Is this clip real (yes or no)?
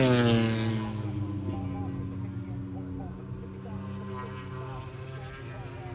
yes